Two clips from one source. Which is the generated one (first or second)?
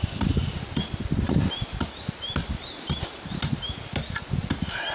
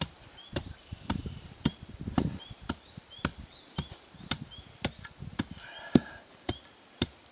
second